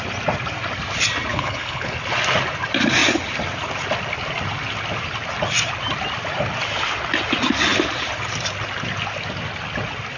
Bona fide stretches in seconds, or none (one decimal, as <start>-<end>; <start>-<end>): 0.0-1.3; 1.9-10.2